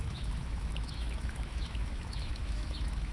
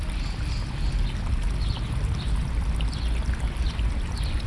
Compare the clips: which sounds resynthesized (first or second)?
first